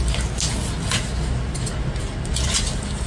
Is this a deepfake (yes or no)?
no